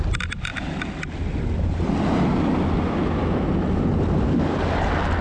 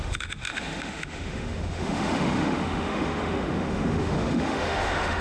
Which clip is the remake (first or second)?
second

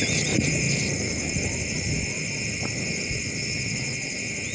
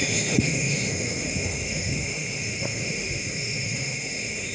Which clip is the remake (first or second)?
second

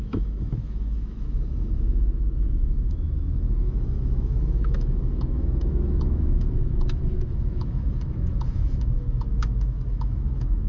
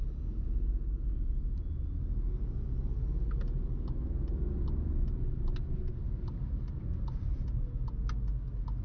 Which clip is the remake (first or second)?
first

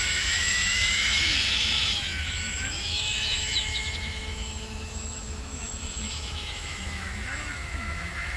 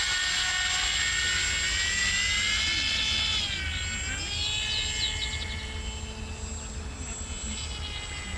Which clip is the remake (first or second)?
first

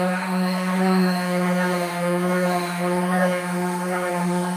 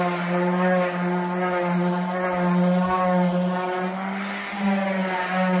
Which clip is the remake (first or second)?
first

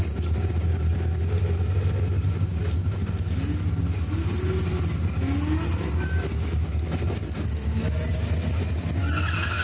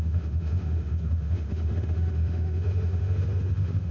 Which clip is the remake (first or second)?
second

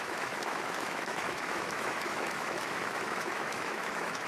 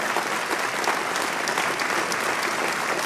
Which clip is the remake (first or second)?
first